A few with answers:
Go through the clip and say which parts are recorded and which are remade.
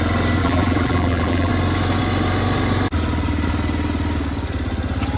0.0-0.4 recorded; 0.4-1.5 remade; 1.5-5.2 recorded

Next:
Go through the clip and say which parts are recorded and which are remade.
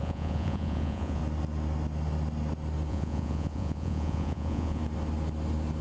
0.0-1.2 remade; 1.2-2.9 recorded; 2.9-4.8 remade; 4.8-5.8 recorded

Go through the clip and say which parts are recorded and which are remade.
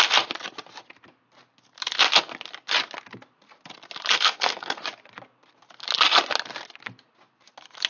0.0-4.1 recorded; 4.1-4.8 remade; 4.8-7.9 recorded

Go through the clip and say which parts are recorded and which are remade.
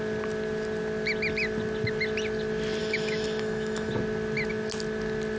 0.0-2.8 recorded; 2.8-3.9 remade; 3.9-5.4 recorded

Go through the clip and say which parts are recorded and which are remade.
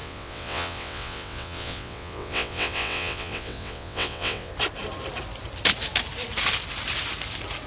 0.0-4.5 remade; 4.5-7.7 recorded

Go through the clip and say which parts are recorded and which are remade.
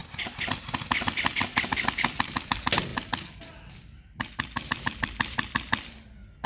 0.0-6.5 recorded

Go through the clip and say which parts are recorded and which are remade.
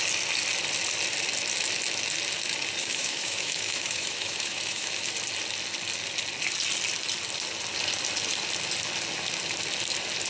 0.0-2.8 recorded; 2.8-5.1 remade; 5.1-10.3 recorded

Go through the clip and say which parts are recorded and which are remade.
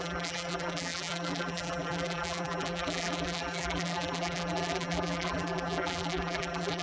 0.0-6.8 remade